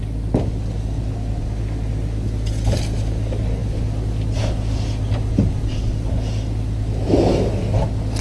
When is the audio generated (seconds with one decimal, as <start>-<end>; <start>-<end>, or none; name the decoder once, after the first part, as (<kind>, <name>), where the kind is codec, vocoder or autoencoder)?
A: none